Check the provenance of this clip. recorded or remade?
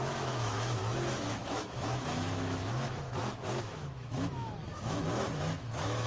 remade